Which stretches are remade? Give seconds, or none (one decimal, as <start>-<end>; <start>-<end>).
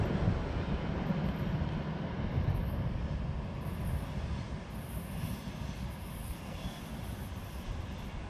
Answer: 6.2-6.8